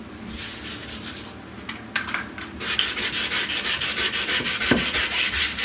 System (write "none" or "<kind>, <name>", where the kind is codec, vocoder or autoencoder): none